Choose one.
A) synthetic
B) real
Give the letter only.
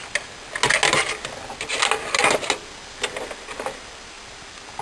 B